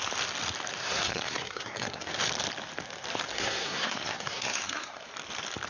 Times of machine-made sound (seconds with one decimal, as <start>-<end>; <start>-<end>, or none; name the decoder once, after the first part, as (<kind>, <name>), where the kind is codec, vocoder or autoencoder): 0.8-2.1 (codec, SNAC); 3.3-5.1